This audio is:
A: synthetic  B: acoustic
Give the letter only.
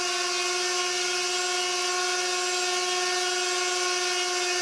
B